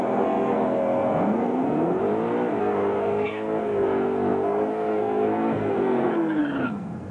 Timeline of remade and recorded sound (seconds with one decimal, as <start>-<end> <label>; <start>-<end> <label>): 0.0-2.0 remade; 2.0-2.6 recorded; 2.6-7.1 remade